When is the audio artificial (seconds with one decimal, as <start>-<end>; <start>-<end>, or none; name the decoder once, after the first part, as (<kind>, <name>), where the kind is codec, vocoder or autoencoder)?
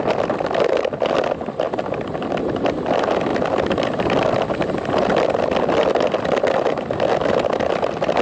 none